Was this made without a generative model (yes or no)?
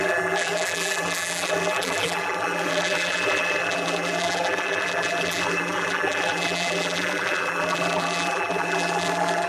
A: no